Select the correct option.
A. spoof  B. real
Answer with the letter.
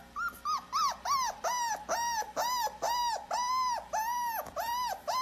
B